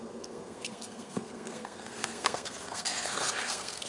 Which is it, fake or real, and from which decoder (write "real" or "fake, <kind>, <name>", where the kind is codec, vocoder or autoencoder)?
fake, codec, SNAC